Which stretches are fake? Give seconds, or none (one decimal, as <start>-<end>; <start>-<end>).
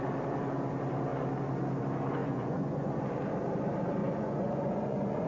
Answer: 2.2-3.0; 4.0-5.3